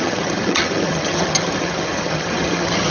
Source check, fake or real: fake